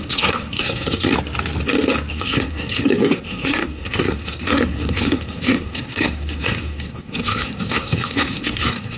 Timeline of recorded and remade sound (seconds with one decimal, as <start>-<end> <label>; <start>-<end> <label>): 0.0-1.1 remade; 1.1-2.1 recorded; 2.1-9.0 remade